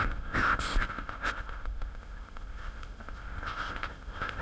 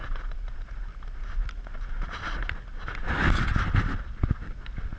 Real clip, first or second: second